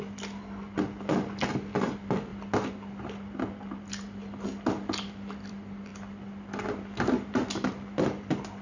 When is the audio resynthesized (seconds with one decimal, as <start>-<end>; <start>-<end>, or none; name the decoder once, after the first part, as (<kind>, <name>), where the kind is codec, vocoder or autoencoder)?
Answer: none

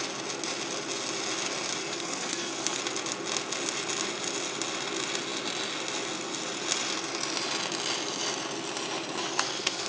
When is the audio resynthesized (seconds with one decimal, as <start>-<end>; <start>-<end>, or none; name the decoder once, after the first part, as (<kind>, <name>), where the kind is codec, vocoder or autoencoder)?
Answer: 1.8-2.8 (codec, SNAC); 9.2-9.9

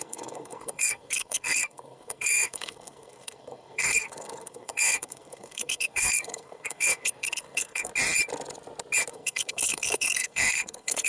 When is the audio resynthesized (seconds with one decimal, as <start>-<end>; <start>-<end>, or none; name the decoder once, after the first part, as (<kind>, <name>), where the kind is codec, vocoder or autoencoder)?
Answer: 0.0-7.9 (codec, SNAC); 9.1-11.1

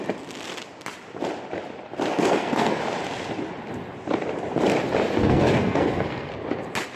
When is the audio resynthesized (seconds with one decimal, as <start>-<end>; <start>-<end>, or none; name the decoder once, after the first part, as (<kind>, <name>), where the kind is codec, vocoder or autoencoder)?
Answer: 2.1-2.8 (codec, SNAC); 5.2-6.3

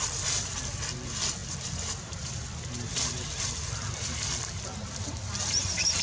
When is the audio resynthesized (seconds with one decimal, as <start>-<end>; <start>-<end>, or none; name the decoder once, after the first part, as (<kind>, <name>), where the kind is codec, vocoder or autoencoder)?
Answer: none

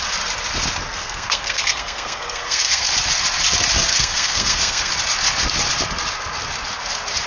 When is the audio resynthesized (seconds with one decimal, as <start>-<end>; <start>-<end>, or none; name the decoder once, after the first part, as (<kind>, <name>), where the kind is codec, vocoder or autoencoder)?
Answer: 1.0-2.9 (codec, SNAC); 3.9-4.9